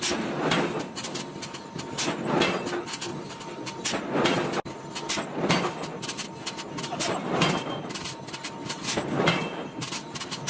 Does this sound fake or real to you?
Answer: real